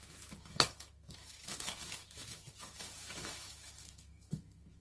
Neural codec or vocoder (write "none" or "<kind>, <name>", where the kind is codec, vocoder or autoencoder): autoencoder, DAC-VAE